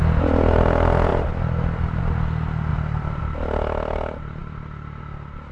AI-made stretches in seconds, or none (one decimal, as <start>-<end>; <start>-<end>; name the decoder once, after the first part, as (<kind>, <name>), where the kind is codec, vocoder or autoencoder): 1.1-2.0 (vocoder, BigVGAN v2); 2.7-3.2